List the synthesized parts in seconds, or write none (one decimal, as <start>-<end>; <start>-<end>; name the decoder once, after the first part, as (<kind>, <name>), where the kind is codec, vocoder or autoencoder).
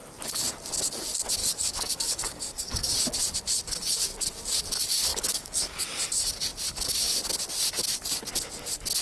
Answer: 1.4-2.9 (codec, DAC); 5.1-5.8